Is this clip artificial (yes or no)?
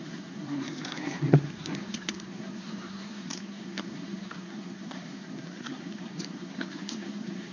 yes